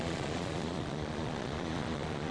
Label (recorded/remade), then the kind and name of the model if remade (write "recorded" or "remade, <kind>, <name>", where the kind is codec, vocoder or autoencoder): remade, vocoder, Vocos